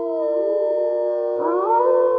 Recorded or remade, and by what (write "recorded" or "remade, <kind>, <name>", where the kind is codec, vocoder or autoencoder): recorded